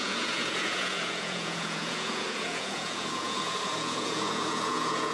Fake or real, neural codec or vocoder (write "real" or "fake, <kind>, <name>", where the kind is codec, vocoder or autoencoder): fake, vocoder, Vocos